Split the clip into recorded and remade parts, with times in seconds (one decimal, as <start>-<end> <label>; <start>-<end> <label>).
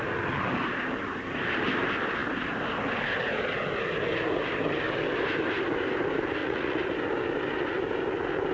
0.0-6.4 recorded; 6.4-6.9 remade; 6.9-8.5 recorded